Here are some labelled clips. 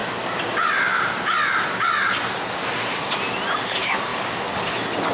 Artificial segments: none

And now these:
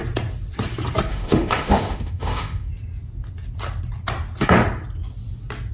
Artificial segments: 1.1-2.7

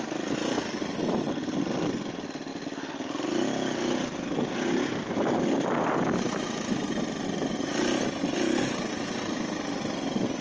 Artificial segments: none

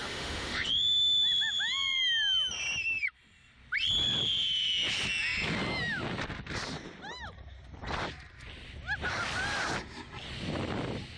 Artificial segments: 0.0-0.7

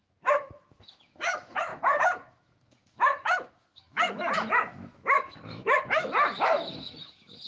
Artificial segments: 0.0-7.5

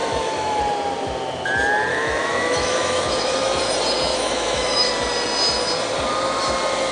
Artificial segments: 0.0-0.6; 1.9-3.6; 4.1-4.9

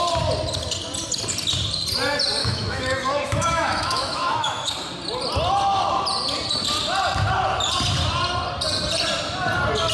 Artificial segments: 2.4-4.7